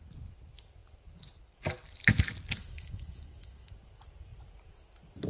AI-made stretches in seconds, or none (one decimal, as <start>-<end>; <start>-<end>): 2.6-3.7